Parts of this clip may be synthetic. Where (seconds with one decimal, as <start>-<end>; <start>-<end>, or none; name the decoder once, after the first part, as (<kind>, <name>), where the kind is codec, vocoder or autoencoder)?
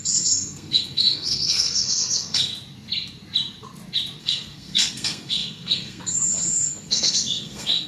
0.0-2.5 (codec, SNAC); 4.2-7.9